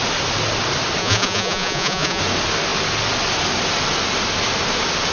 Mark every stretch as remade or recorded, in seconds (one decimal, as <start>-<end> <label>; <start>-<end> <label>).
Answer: 0.0-1.0 recorded; 1.0-2.2 remade; 2.2-5.1 recorded